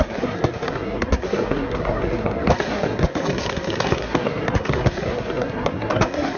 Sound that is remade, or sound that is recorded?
remade